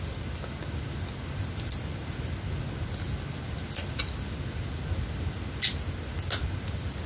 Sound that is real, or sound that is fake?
real